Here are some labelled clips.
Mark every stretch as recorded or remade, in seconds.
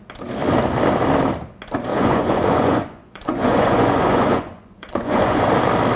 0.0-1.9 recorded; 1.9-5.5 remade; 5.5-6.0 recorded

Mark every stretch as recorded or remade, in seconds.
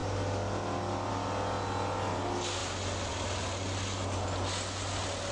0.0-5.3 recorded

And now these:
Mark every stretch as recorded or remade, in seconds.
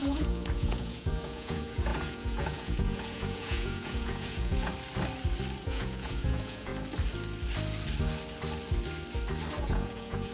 0.0-4.7 remade; 4.7-5.6 recorded; 5.6-6.7 remade; 6.7-9.6 recorded; 9.6-10.3 remade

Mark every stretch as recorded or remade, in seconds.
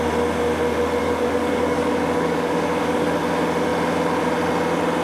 0.0-1.0 recorded; 1.0-3.2 remade; 3.2-5.0 recorded